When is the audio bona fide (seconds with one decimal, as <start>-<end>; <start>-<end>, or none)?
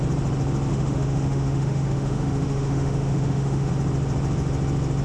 0.0-0.7; 3.7-5.0